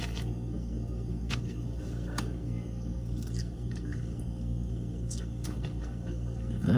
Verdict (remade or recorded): remade